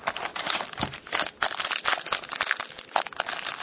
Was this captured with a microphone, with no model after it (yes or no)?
yes